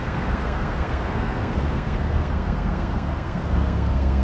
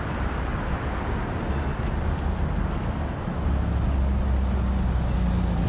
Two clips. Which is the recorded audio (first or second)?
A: second